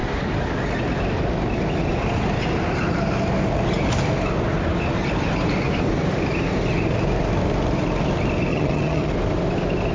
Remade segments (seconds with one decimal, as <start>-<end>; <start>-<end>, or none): 8.5-9.1